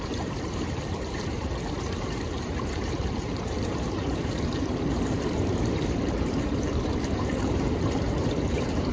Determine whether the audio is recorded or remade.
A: remade